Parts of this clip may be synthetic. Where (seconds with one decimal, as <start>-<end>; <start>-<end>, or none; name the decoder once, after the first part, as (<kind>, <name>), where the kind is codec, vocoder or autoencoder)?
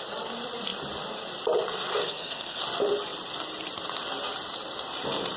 2.0-2.6 (codec, SNAC)